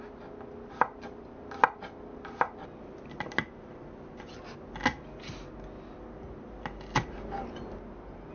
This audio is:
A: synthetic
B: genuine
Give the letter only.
B